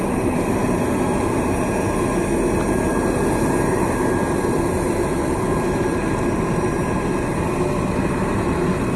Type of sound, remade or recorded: recorded